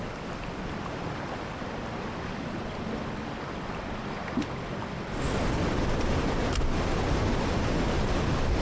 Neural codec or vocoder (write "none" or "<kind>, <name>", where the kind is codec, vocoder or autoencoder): vocoder, BigVGAN v2